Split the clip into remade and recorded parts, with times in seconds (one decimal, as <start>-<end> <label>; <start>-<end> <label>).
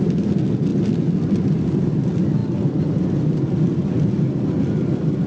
0.0-5.3 recorded